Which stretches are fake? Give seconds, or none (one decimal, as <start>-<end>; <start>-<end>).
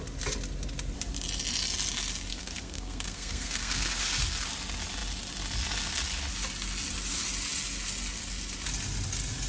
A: 2.3-4.0